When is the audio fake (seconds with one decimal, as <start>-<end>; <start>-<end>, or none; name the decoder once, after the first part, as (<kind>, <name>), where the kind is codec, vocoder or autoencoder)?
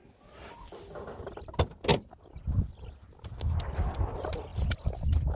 4.5-5.4 (vocoder, BigVGAN v2)